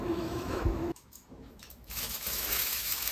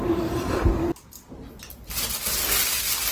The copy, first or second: first